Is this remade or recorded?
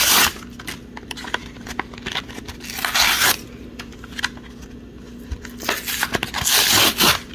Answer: recorded